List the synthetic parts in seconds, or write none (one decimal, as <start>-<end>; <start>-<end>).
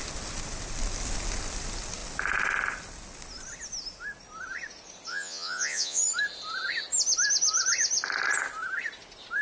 5.1-6.0